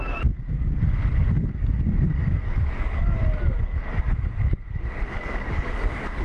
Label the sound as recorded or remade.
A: remade